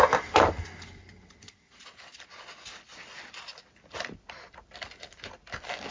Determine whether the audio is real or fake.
real